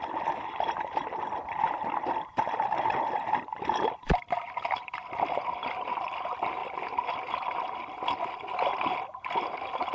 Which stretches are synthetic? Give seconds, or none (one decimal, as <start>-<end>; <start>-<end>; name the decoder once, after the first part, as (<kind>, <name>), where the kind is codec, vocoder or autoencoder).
0.0-9.9 (vocoder, BigVGAN v2)